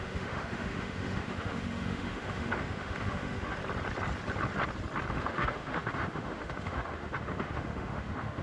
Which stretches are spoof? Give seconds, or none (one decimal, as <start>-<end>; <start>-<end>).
0.0-3.6; 5.1-8.4